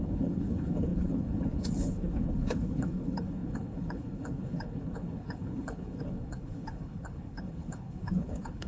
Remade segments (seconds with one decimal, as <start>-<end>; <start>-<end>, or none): 0.0-8.7